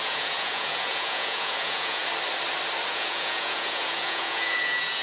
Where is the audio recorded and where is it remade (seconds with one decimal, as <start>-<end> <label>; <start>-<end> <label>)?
0.0-2.0 remade; 2.0-2.9 recorded; 2.9-5.0 remade